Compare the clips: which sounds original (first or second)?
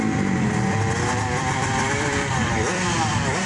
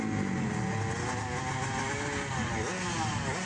second